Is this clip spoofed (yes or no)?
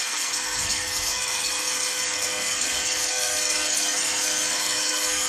yes